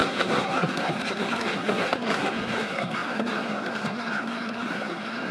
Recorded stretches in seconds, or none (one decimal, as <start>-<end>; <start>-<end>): none